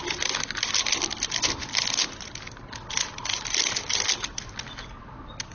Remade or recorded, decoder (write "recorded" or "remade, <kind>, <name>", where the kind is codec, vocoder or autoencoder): recorded